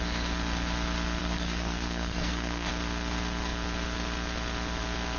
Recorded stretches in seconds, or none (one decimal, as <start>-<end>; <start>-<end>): 0.0-1.2; 2.7-5.2